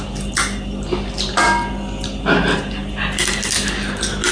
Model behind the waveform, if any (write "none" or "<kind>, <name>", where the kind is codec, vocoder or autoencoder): none